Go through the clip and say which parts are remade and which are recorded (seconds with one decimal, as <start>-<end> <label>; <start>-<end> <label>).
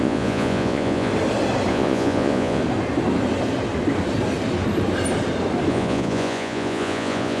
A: 0.0-1.1 remade; 1.1-1.7 recorded; 1.7-2.6 remade; 2.6-5.7 recorded; 5.7-7.4 remade